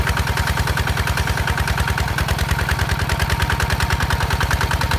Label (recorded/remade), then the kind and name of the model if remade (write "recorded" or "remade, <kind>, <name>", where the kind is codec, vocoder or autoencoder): recorded